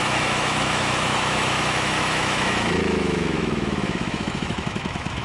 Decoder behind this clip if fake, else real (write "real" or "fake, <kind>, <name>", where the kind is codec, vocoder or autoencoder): fake, autoencoder, DAC-VAE